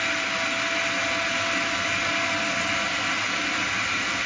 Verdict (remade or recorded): recorded